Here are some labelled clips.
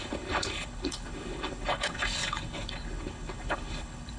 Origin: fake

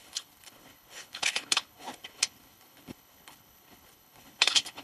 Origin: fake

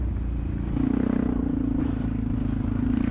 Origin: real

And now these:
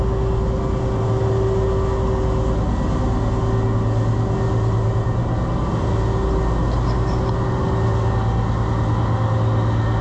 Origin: real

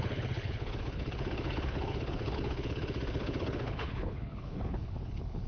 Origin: fake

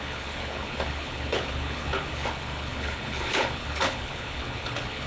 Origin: fake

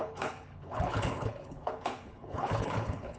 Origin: fake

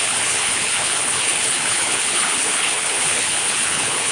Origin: fake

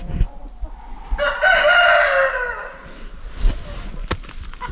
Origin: real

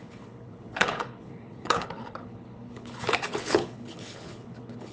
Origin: fake